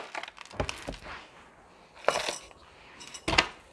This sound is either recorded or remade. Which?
recorded